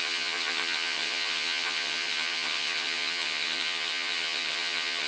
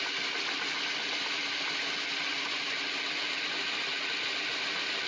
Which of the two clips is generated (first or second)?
first